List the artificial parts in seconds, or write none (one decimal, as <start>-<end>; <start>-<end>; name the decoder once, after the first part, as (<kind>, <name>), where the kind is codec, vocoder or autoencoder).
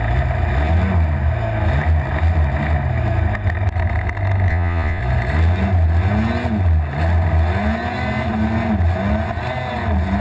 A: 4.5-5.0 (vocoder, Vocos)